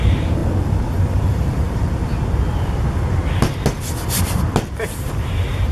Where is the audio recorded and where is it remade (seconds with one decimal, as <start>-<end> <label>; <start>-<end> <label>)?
0.0-0.4 remade; 0.4-1.0 recorded; 1.0-2.1 remade; 2.1-4.9 recorded; 4.9-5.7 remade